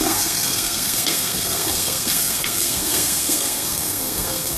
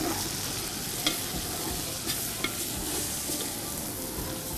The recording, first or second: second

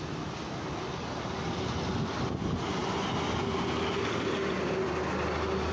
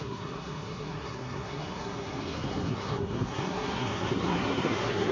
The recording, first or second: first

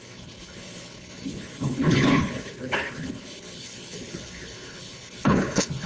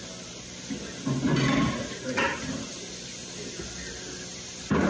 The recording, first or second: second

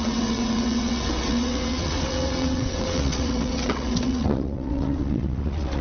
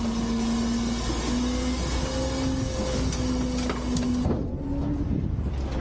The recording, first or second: second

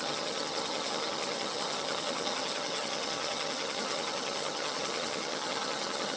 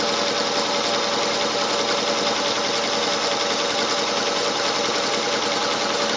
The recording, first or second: second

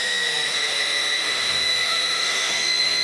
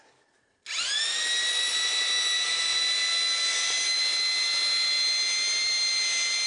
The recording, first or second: second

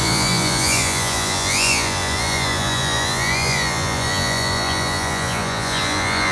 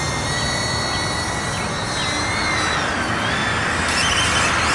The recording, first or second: second